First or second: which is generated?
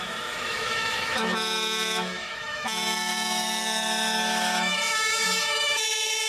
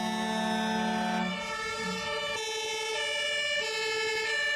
first